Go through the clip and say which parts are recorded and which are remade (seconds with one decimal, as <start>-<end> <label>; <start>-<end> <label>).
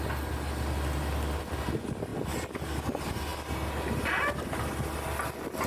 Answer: 0.0-5.7 recorded